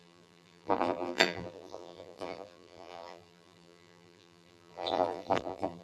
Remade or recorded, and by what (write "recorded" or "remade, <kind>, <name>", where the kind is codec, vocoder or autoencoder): remade, vocoder, BigVGAN v2